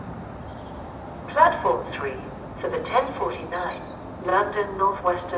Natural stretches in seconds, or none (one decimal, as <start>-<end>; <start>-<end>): 0.0-5.4